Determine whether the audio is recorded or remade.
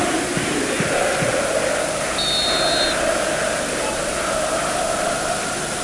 recorded